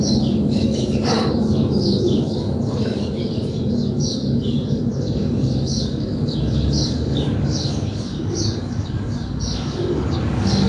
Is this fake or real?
fake